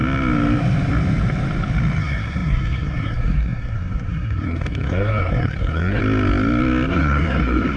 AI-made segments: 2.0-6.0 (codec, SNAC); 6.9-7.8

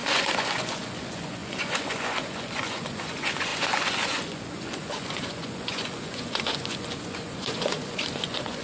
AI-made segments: 0.0-8.6 (vocoder, Vocos)

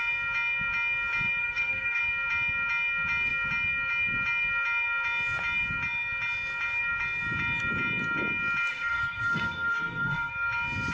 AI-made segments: 1.4-2.0 (codec, SNAC); 8.7-10.3

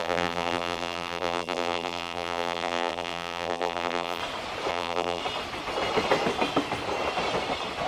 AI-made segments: 0.0-4.2 (vocoder, BigVGAN v2); 4.7-5.2

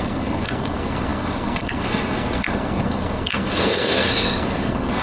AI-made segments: 0.0-5.0 (codec, SNAC)